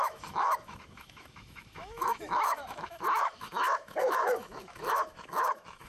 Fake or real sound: fake